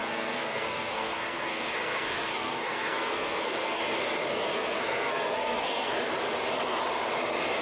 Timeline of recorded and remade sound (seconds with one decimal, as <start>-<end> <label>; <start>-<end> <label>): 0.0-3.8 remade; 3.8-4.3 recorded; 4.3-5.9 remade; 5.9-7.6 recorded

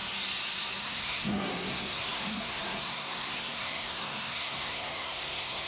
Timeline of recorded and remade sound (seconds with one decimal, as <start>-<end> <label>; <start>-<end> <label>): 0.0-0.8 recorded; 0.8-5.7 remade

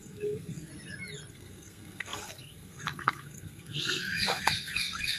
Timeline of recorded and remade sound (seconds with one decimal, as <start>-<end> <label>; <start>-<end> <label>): 0.0-0.7 remade; 0.7-1.3 recorded; 1.3-5.2 remade

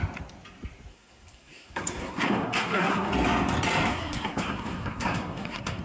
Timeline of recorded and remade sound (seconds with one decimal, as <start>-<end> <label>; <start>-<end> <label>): 0.0-0.9 recorded; 0.9-3.1 remade; 3.1-3.9 recorded; 3.9-5.8 remade

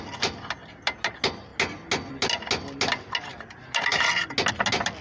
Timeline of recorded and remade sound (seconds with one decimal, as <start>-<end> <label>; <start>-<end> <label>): 0.0-5.0 recorded

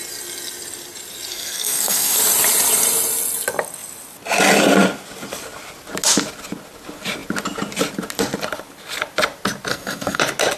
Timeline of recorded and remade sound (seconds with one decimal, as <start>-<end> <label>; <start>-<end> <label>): 0.0-1.3 recorded; 1.3-2.2 remade; 2.2-9.7 recorded; 9.7-10.2 remade; 10.2-10.6 recorded

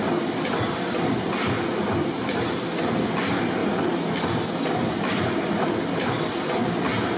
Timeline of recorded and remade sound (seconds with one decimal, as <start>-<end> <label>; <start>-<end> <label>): 0.0-7.2 recorded

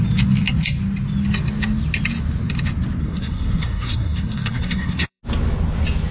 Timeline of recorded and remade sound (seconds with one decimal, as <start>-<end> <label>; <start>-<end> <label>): 0.0-3.0 recorded; 3.0-5.2 remade; 5.2-6.1 recorded